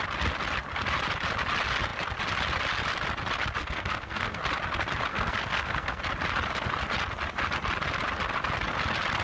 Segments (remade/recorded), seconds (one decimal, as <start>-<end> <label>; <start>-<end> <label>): 0.0-3.6 recorded; 3.6-4.4 remade; 4.4-5.1 recorded; 5.1-6.0 remade; 6.0-9.2 recorded